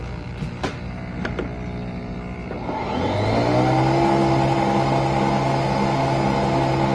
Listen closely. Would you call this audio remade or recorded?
recorded